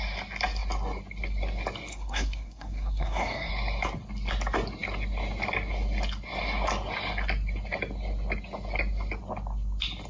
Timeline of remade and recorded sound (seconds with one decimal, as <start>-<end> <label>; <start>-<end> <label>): 0.0-1.9 recorded; 1.9-3.5 remade; 3.5-10.1 recorded